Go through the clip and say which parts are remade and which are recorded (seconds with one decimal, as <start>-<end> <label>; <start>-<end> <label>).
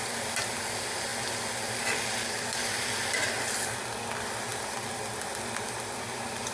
0.0-6.5 recorded